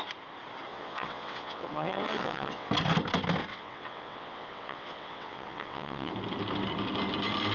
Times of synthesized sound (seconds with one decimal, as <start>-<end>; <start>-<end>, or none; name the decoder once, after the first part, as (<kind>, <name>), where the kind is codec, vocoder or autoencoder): 0.7-2.7 (vocoder, WaveNeXt); 3.5-6.1